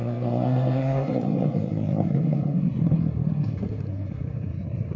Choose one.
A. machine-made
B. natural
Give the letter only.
A